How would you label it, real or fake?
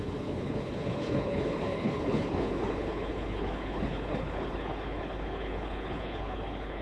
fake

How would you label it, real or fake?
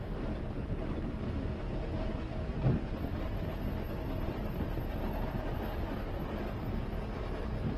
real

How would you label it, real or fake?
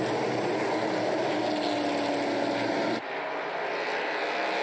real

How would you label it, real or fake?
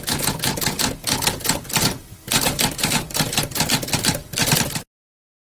real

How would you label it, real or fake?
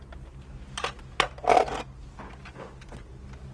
real